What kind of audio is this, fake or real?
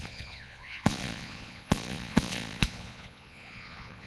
fake